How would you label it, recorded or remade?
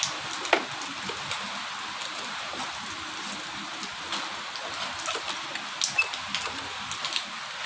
recorded